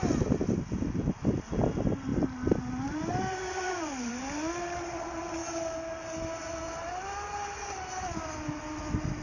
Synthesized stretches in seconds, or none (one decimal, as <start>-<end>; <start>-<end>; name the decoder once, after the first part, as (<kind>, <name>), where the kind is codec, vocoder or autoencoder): none